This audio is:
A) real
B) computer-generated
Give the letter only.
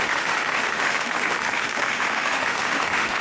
B